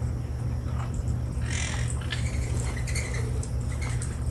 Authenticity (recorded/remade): recorded